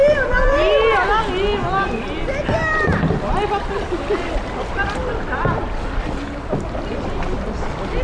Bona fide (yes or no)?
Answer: yes